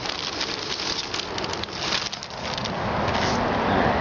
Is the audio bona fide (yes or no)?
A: yes